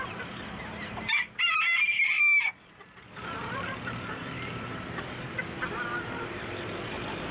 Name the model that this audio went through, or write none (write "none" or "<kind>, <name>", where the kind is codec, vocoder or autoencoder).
vocoder, BigVGAN v2